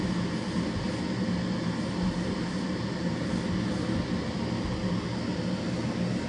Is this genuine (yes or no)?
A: yes